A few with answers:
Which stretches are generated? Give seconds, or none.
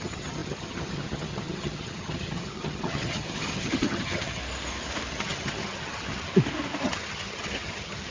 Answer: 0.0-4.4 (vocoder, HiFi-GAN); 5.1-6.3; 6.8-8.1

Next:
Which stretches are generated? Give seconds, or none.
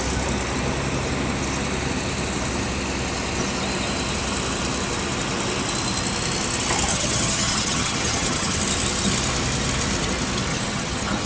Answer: 6.9-8.6 (vocoder, HiFi-GAN); 10.5-11.3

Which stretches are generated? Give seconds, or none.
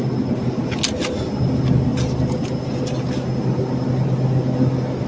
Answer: none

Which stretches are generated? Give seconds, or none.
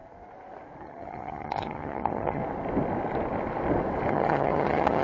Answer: 0.8-2.4 (vocoder, HiFi-GAN); 4.1-5.0